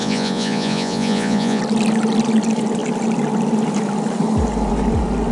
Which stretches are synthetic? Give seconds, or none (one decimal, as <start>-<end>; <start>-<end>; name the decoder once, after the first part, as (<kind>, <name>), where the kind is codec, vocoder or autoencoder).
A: 0.0-1.6 (vocoder, Vocos)